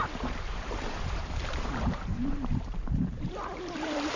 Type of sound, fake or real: fake